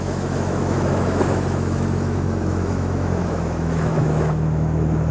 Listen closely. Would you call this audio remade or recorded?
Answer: remade